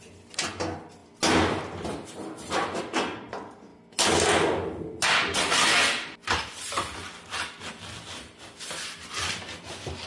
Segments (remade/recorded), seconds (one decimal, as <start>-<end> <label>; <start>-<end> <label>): 0.0-10.1 recorded